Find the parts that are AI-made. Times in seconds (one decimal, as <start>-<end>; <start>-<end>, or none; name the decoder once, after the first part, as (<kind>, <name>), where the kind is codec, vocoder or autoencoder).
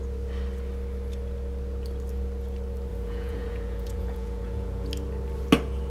2.9-4.9 (vocoder, Vocos)